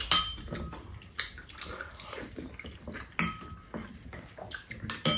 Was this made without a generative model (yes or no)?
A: yes